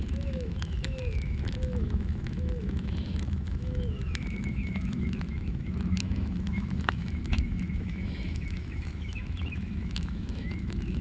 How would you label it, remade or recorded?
remade